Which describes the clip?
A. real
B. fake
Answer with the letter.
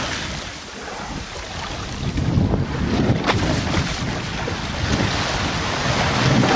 A